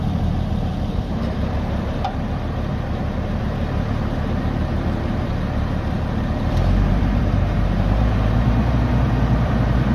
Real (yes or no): no